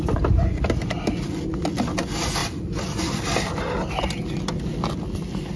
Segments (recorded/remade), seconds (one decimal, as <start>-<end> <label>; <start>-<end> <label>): 0.0-5.6 recorded